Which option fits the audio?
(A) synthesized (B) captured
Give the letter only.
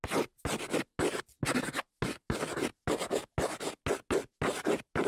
B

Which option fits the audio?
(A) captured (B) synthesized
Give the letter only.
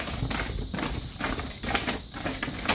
A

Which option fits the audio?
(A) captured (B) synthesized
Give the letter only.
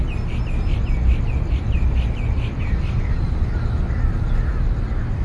A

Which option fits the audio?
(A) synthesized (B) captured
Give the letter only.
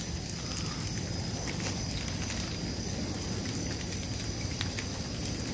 B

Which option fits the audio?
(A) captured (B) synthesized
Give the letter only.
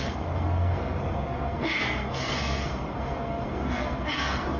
B